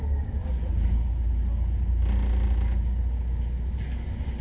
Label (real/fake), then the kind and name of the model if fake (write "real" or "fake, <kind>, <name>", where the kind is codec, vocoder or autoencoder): real